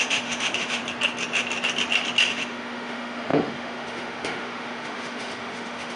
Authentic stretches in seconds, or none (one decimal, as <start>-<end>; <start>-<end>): 0.8-2.3